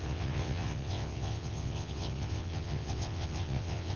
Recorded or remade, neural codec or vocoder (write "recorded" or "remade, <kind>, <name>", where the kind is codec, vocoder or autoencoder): remade, vocoder, WaveNeXt